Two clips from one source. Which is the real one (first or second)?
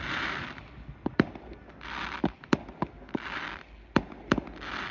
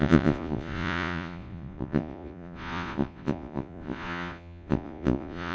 first